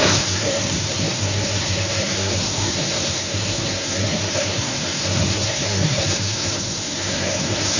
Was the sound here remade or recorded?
remade